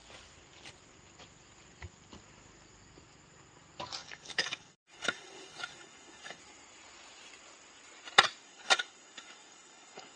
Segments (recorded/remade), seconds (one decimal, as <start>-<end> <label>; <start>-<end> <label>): 0.0-4.0 recorded; 4.0-6.4 remade; 6.4-8.4 recorded; 8.4-10.2 remade